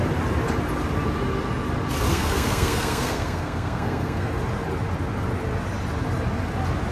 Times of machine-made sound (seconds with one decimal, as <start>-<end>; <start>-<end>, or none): 2.1-4.3